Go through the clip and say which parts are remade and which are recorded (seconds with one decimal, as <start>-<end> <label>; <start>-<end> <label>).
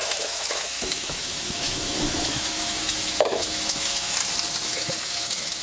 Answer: 0.0-4.2 remade; 4.2-4.7 recorded; 4.7-5.6 remade